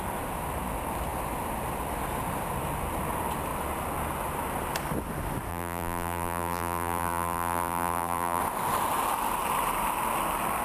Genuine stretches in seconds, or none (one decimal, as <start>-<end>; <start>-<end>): 0.0-5.5; 8.4-10.6